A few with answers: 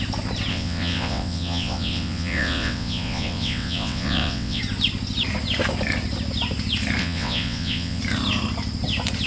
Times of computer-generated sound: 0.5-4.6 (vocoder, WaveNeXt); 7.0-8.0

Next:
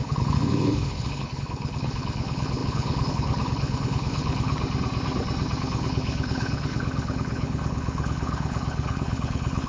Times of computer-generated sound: 0.0-4.5 (codec, HILCodec); 5.6-9.7

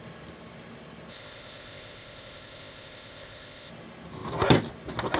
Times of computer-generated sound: 1.1-3.7 (codec, ZipCodec)

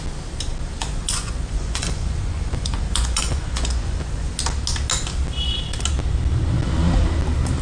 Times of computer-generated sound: 0.8-4.3 (vocoder, Vocos)